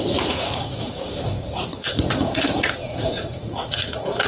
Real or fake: fake